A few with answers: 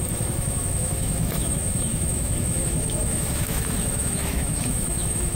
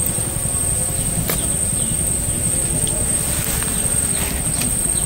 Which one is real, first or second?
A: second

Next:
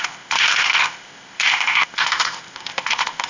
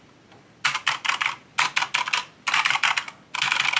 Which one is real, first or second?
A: second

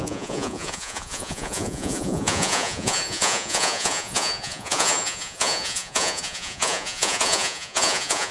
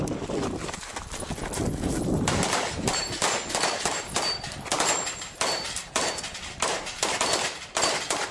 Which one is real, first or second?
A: second